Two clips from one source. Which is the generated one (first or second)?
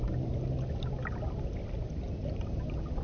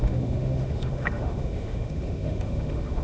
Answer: second